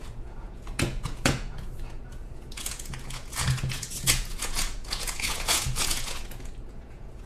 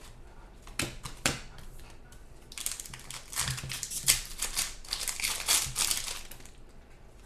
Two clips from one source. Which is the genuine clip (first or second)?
second